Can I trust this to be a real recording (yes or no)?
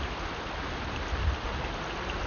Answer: yes